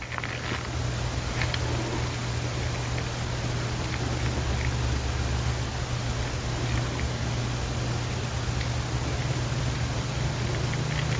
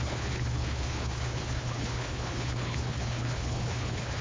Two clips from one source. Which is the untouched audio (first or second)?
first